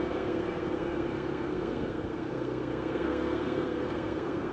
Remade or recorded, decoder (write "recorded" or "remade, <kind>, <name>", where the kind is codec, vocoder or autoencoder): remade, codec, SNAC